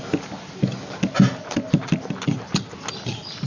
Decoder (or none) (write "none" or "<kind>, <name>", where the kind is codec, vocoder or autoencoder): none